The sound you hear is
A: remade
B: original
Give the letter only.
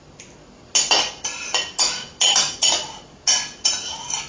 B